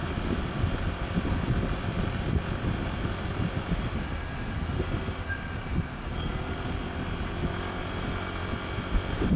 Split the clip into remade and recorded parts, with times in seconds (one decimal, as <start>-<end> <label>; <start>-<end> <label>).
0.0-9.4 recorded